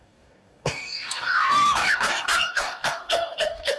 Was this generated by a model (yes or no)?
yes